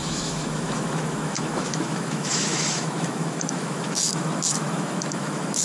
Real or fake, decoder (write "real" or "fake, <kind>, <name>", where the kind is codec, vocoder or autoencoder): fake, autoencoder, DAC-VAE